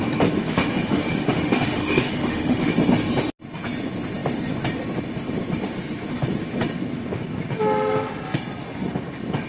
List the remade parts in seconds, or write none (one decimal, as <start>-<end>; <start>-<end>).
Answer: 0.4-2.7